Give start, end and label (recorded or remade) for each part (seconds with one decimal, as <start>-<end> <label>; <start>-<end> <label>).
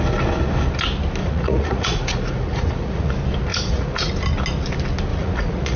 0.0-1.2 recorded; 1.2-3.1 remade; 3.1-3.5 recorded; 3.5-4.1 remade; 4.1-5.1 recorded; 5.1-5.8 remade